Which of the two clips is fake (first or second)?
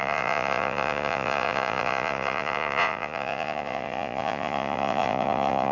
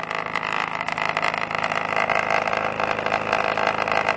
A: first